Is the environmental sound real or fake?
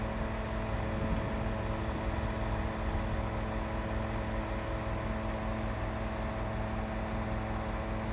real